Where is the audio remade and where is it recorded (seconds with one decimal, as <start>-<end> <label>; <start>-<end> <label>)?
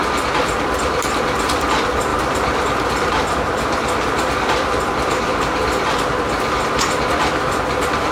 0.0-1.2 remade; 1.2-2.1 recorded; 2.1-5.9 remade; 5.9-8.1 recorded